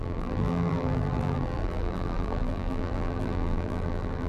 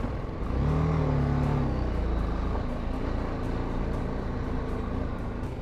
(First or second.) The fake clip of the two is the first